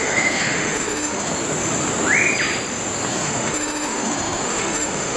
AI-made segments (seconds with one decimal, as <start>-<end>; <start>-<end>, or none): 0.0-1.3; 3.1-5.2